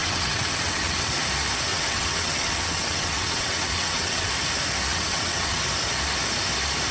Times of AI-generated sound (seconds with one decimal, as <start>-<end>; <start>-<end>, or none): 0.0-1.1; 1.7-4.3; 4.9-5.6